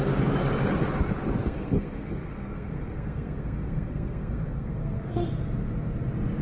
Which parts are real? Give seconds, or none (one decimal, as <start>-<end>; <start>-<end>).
0.0-1.4; 5.2-6.4

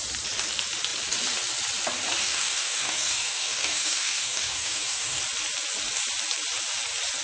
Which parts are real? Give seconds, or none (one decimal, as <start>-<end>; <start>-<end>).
0.0-2.2; 5.2-7.2

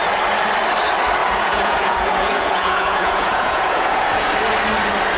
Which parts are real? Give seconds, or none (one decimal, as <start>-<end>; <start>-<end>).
0.0-1.2; 4.3-5.2

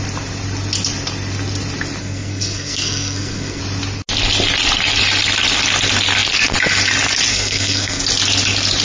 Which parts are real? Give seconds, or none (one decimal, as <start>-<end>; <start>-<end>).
0.0-2.0; 3.6-7.3; 8.0-8.8

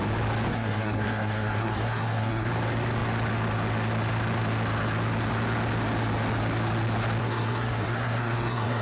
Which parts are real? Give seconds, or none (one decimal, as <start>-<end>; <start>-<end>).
0.0-0.5; 2.5-7.2

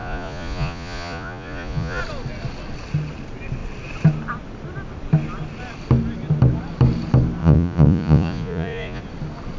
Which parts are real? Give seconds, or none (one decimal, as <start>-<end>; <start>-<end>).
2.0-7.4; 9.0-9.6

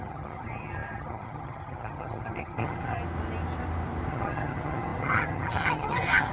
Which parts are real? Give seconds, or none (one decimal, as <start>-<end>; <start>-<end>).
3.0-4.1

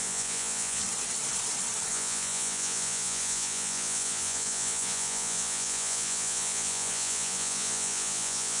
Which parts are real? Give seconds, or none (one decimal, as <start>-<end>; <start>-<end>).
0.8-1.9